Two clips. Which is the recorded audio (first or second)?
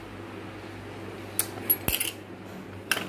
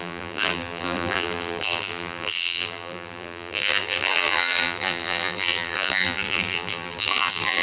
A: first